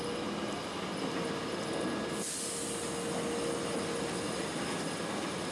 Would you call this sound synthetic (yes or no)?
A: no